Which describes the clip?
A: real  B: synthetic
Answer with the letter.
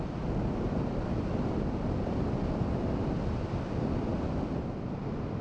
A